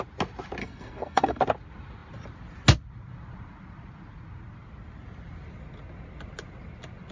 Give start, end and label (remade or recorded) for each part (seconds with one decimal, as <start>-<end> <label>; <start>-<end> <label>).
0.0-0.6 recorded; 0.6-1.4 remade; 1.4-7.1 recorded